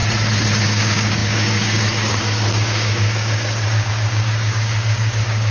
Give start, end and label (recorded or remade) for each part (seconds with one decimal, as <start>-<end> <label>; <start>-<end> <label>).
0.0-0.6 recorded; 0.6-5.5 remade